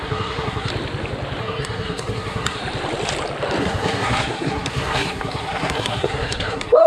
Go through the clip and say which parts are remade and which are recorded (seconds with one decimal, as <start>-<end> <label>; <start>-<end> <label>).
0.0-0.7 remade; 0.7-1.4 recorded; 1.4-2.6 remade; 2.6-3.6 recorded; 3.6-6.9 remade